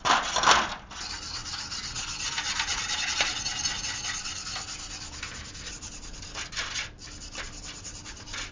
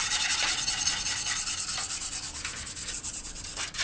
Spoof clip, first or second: second